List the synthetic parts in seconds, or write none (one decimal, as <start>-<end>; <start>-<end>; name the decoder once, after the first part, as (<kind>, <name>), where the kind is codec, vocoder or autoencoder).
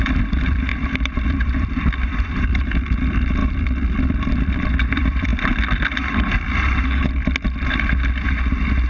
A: 0.0-5.3 (vocoder, BigVGAN v2); 8.5-8.9